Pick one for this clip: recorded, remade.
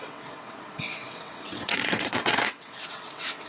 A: remade